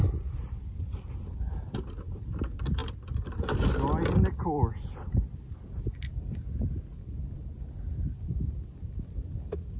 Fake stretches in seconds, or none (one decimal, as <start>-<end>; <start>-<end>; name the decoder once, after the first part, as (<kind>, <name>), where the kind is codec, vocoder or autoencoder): none